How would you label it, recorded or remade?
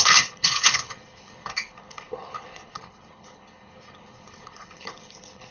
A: remade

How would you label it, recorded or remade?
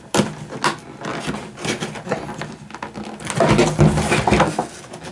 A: recorded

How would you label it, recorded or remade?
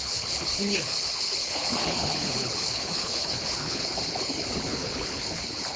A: remade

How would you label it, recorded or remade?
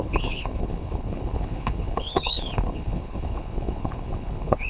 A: remade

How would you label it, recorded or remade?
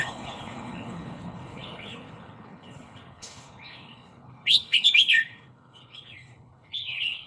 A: remade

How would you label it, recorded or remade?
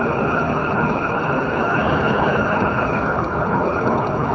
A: remade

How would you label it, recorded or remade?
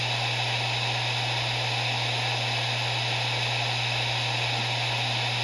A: recorded